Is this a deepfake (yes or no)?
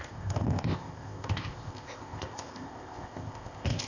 yes